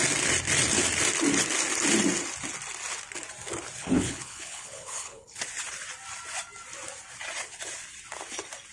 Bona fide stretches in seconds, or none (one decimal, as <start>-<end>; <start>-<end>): 0.0-3.8; 5.4-8.7

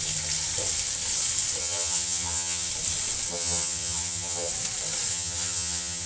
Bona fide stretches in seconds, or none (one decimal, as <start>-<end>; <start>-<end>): 0.0-1.6; 2.7-3.3; 4.5-5.1

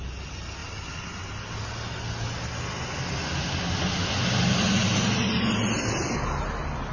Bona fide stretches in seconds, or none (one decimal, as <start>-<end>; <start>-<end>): 0.0-6.9

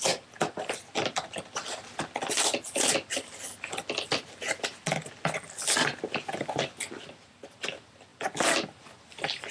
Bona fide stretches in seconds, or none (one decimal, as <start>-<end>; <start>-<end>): 0.0-9.5

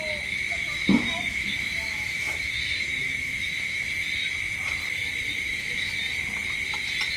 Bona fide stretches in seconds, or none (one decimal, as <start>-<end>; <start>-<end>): 0.0-0.5; 3.8-5.5; 6.0-7.2